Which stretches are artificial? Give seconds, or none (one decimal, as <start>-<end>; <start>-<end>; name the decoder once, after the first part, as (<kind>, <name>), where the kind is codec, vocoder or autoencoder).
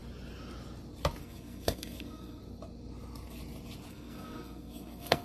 1.2-2.4 (codec, SNAC); 3.9-5.2